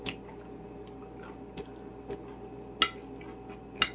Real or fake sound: real